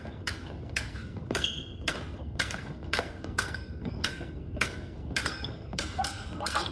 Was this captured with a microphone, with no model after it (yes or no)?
no